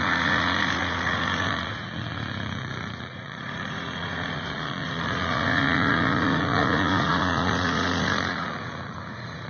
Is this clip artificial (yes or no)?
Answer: yes